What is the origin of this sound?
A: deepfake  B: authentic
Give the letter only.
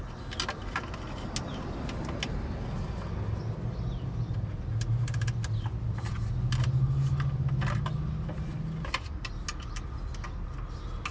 B